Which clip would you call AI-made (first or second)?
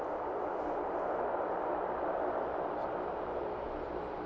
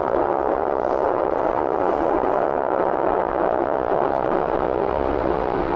second